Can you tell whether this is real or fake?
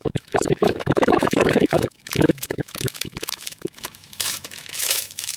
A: fake